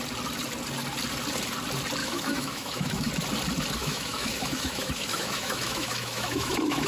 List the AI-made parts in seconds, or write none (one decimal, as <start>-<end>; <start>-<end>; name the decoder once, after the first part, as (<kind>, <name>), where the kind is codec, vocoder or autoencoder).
2.0-3.1 (autoencoder, DAC-VAE); 3.8-6.9